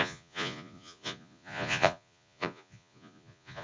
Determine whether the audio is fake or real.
fake